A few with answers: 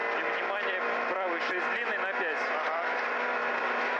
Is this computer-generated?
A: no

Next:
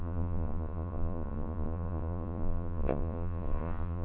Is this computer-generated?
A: yes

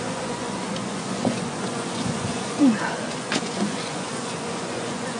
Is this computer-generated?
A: yes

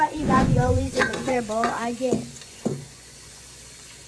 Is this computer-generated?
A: yes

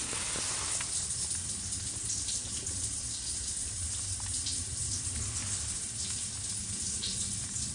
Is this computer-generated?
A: no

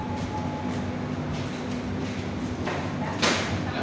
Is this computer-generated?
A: no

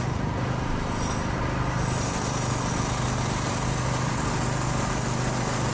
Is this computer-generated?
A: no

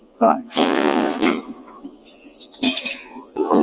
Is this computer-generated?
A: yes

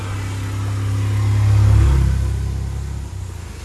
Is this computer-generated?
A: no